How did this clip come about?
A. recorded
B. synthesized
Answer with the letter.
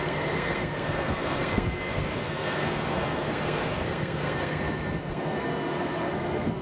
B